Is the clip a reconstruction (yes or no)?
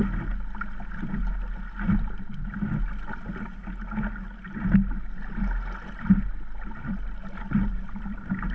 no